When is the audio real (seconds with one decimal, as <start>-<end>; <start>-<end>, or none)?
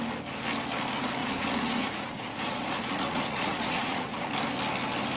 0.0-1.2; 4.3-5.2